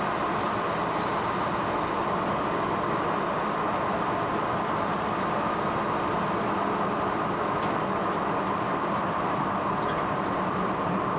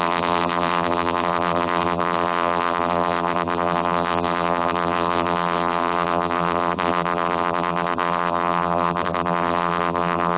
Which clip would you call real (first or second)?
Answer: first